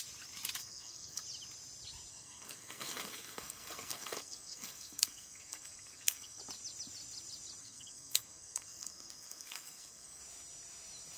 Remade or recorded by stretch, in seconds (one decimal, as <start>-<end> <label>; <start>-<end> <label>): 0.0-0.6 recorded; 0.6-1.2 remade; 1.2-2.1 recorded; 2.1-6.4 remade; 6.4-7.6 recorded; 7.6-10.2 remade; 10.2-11.2 recorded